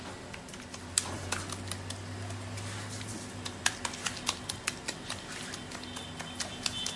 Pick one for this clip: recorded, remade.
recorded